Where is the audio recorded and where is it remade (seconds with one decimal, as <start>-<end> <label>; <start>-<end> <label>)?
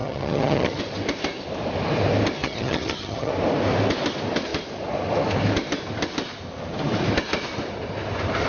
0.0-0.8 remade; 0.8-2.4 recorded; 2.4-3.3 remade; 3.3-8.5 recorded